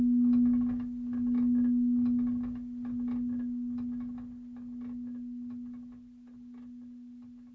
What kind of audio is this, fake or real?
real